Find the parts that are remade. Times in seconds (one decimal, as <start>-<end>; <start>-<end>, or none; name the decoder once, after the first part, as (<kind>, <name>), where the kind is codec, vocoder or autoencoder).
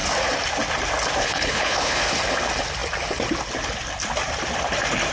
1.2-2.0 (codec, HILCodec)